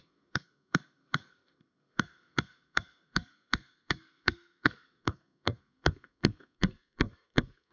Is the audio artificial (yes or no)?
yes